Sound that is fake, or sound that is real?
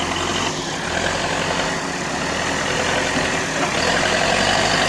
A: real